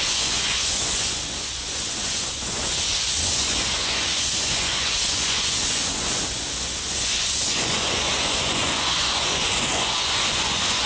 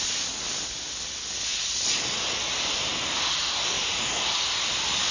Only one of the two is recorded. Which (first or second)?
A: second